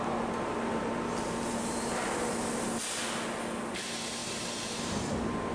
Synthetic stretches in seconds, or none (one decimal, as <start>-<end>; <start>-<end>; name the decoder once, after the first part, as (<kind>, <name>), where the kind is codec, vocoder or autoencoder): 0.7-2.6 (vocoder, BigVGAN v2); 4.2-5.1